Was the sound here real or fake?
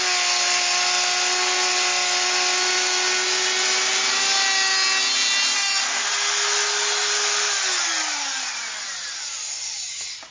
real